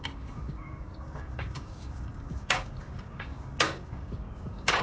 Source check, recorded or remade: remade